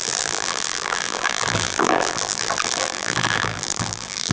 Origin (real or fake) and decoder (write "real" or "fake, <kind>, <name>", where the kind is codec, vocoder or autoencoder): fake, vocoder, BigVGAN v2